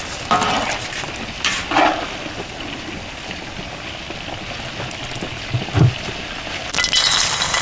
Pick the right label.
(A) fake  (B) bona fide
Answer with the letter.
B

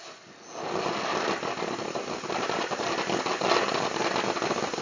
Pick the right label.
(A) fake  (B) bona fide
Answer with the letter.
B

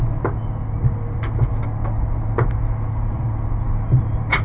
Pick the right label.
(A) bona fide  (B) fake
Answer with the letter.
A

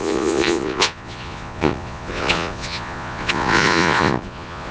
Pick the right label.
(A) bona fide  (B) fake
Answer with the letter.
B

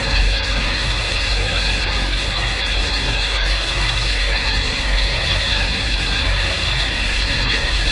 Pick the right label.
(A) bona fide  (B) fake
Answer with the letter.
B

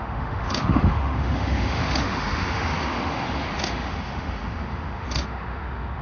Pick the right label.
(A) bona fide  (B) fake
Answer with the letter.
B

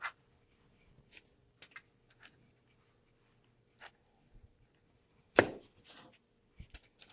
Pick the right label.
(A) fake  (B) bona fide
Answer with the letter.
B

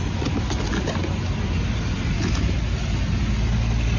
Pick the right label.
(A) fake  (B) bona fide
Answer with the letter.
B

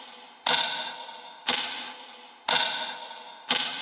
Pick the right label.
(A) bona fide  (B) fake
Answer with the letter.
A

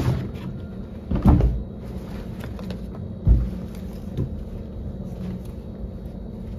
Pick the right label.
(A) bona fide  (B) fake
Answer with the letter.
A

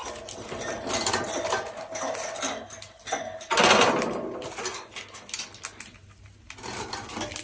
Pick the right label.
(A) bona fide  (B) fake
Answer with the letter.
A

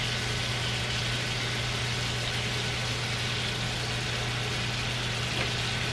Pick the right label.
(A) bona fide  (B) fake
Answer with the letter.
A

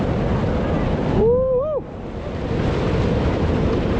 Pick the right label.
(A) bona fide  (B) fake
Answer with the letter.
A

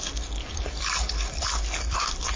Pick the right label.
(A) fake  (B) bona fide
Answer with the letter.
A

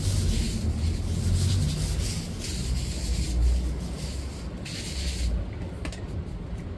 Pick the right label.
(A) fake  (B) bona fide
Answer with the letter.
B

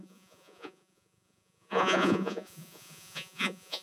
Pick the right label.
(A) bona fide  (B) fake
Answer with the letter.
B